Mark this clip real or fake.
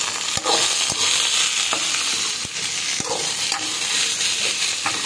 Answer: real